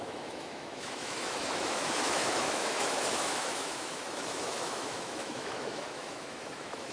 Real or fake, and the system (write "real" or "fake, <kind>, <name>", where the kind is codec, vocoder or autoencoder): fake, autoencoder, DAC-VAE